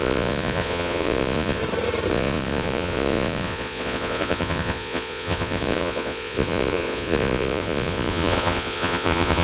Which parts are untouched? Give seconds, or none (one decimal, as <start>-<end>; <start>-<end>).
1.6-2.1